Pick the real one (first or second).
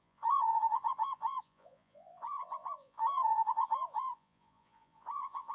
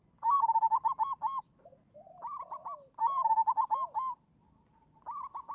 second